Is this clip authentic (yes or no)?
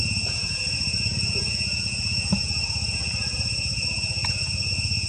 no